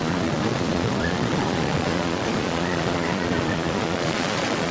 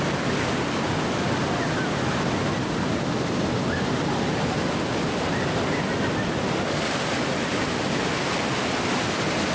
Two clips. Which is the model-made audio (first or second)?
first